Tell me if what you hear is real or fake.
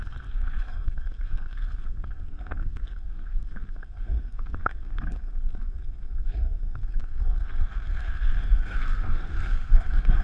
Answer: fake